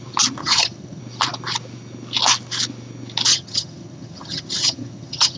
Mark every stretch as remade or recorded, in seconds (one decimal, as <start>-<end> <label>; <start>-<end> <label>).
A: 0.0-0.4 recorded; 0.4-1.0 remade; 1.0-3.3 recorded; 3.3-5.4 remade